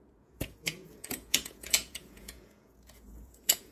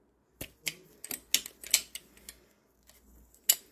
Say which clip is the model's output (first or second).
first